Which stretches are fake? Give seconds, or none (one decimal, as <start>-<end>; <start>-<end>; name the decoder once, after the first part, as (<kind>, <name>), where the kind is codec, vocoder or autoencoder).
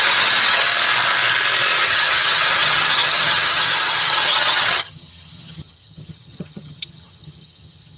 0.0-0.7 (vocoder, HiFi-GAN); 1.8-8.0